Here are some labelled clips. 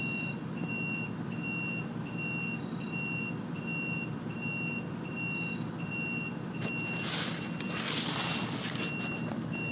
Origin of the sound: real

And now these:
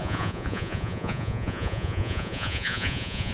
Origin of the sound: fake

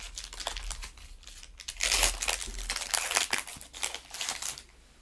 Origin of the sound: real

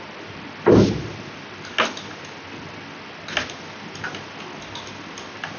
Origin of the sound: real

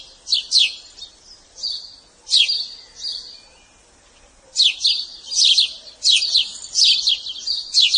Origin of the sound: real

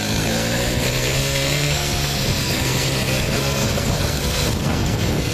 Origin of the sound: fake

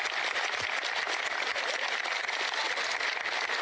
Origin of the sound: real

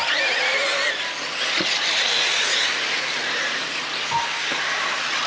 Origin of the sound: real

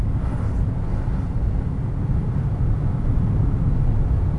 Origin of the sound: real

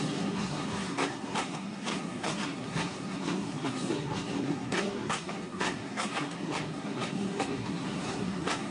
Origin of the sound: fake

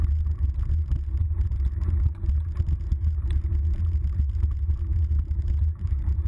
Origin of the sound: fake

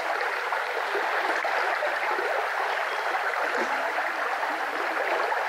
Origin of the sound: real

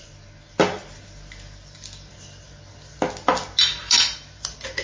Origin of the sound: real